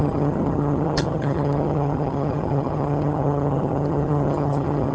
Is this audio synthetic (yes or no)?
yes